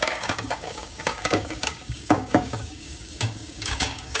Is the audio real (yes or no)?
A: no